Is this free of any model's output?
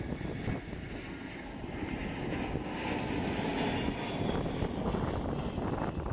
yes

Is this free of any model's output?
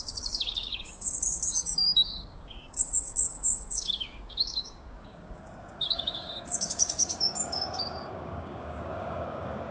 no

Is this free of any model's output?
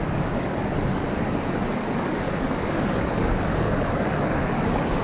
no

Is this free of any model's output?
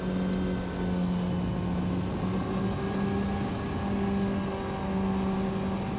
yes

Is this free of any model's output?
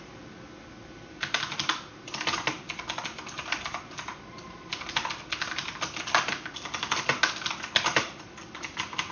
yes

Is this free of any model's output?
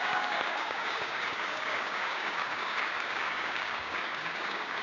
no